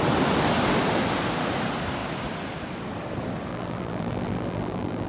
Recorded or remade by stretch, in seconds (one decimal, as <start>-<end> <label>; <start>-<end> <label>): 0.0-3.5 recorded; 3.5-5.1 remade